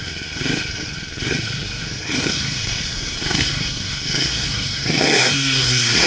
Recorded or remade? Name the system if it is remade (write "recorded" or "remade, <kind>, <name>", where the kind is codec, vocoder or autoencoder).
remade, codec, SNAC